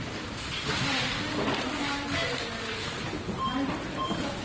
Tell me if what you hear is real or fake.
real